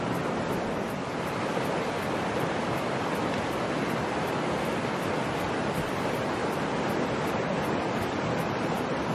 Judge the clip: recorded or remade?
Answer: recorded